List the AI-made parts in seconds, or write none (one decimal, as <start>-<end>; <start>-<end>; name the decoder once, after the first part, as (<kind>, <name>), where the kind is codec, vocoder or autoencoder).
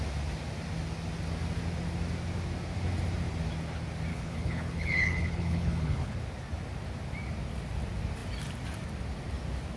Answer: 4.1-6.2 (codec, HILCodec)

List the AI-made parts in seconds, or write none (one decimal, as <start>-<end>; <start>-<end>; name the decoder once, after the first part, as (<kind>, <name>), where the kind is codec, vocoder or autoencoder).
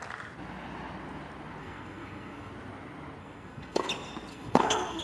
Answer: 1.6-2.5 (codec, SNAC); 3.2-3.9; 4.3-5.0